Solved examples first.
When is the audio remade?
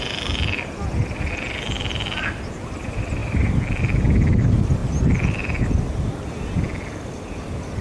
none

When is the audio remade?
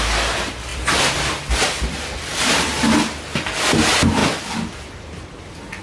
none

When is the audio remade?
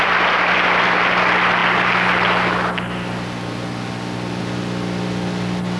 none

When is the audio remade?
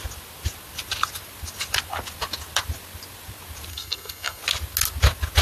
3.7-4.4 (codec, SNAC)